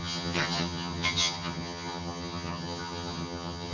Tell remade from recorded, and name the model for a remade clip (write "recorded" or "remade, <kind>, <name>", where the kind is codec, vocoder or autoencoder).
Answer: remade, vocoder, HiFi-GAN